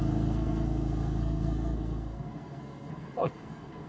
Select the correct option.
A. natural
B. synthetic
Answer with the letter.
B